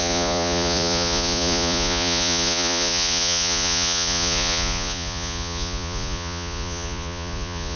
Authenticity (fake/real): fake